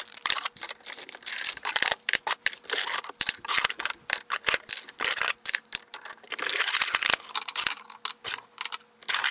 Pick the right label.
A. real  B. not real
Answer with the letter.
A